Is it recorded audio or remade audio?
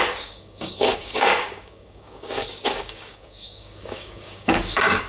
remade